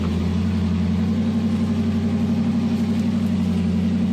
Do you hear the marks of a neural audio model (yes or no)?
no